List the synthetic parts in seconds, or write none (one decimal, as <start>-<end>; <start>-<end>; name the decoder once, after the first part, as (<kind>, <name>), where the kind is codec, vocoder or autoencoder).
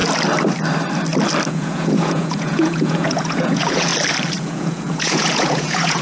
1.5-3.9 (vocoder, Vocos); 4.4-6.0